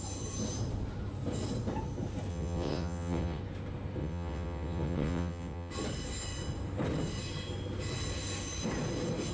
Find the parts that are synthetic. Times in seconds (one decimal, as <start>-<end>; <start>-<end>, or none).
2.3-3.4; 4.0-5.7